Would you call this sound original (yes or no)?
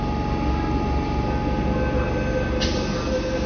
yes